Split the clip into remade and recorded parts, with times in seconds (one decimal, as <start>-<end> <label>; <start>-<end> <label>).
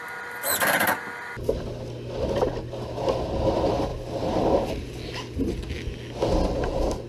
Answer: 0.0-7.1 recorded